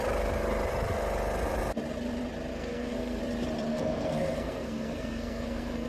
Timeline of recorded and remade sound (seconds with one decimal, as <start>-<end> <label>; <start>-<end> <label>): 0.0-2.5 recorded; 2.5-3.2 remade; 3.2-3.7 recorded; 3.7-5.9 remade